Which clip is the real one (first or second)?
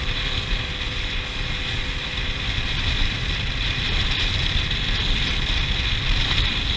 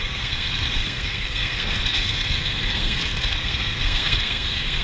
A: first